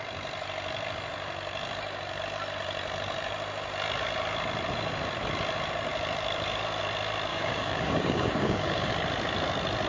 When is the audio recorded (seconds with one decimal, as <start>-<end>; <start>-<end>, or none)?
0.0-7.3; 8.9-9.9